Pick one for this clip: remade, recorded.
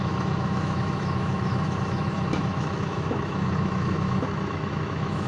remade